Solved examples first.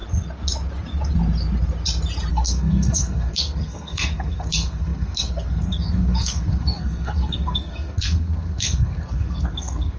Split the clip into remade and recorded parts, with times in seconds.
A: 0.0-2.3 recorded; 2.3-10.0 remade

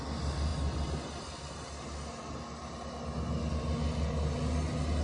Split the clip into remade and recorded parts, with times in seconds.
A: 0.0-5.0 recorded

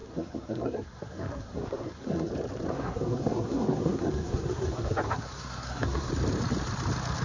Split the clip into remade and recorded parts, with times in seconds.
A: 0.0-2.3 remade; 2.3-2.7 recorded; 2.7-6.1 remade; 6.1-7.2 recorded

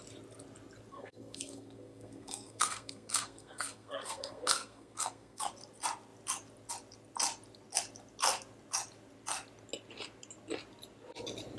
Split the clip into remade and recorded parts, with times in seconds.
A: 0.0-0.9 recorded; 0.9-5.5 remade; 5.5-11.6 recorded